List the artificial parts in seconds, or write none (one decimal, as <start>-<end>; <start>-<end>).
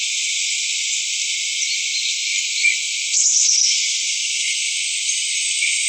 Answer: none